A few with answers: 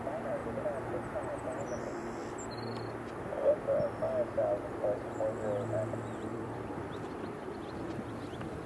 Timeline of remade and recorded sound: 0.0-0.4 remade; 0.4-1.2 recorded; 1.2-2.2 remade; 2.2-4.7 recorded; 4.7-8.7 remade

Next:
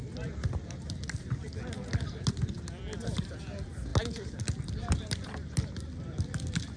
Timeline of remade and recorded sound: 0.0-6.8 recorded

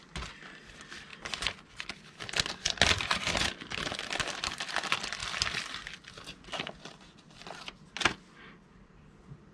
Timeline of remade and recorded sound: 0.0-1.1 remade; 1.1-4.3 recorded; 4.3-5.2 remade; 5.2-8.4 recorded; 8.4-9.5 remade

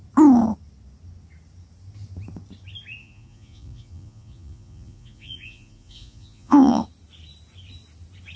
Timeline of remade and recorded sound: 0.0-3.0 recorded; 3.0-6.8 remade; 6.8-8.4 recorded

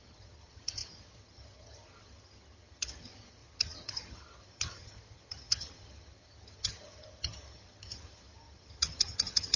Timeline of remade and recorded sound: 0.0-9.6 remade